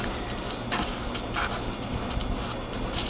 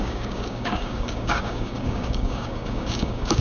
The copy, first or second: second